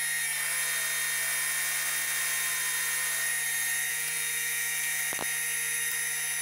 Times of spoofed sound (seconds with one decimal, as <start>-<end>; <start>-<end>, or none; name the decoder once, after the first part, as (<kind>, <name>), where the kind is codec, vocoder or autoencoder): 3.9-5.0 (vocoder, Vocos)